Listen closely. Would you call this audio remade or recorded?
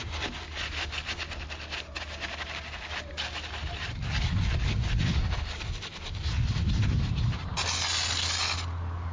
recorded